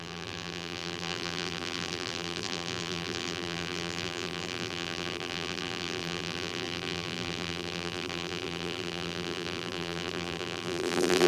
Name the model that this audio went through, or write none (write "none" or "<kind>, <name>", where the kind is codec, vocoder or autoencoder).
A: vocoder, BigVGAN v2